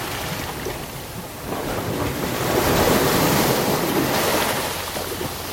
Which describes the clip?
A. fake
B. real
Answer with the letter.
B